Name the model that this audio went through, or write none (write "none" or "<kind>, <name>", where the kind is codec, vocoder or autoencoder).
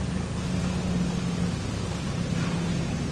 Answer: none